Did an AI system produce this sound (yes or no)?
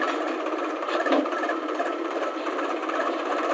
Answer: yes